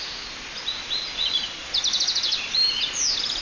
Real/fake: real